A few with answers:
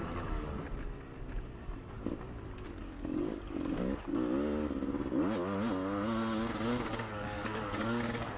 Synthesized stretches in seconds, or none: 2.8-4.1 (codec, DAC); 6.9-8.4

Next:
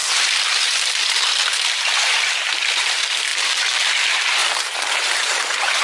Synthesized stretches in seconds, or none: 3.3-4.0 (vocoder, BigVGAN v2); 4.4-5.8